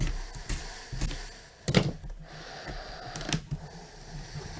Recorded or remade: recorded